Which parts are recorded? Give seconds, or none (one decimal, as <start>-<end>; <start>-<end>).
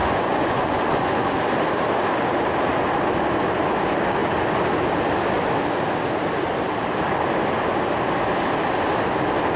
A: 1.3-9.6